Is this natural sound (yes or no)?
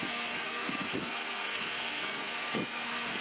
no